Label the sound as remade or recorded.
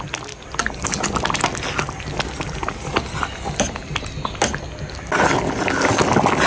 recorded